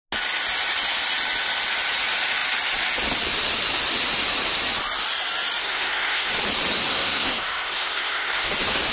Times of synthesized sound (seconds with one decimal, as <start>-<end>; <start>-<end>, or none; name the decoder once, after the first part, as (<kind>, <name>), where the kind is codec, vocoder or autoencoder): 5.6-6.3 (codec, SNAC); 6.9-8.5